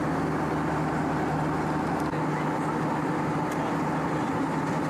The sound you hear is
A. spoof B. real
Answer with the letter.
B